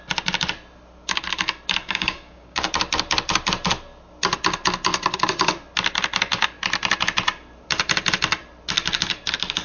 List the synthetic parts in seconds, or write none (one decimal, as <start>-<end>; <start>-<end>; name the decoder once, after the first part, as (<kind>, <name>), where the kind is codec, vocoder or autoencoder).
1.8-2.7 (codec, DAC)